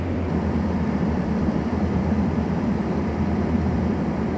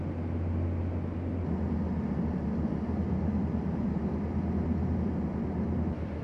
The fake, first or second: first